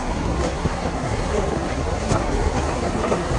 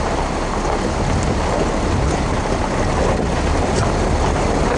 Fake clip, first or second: first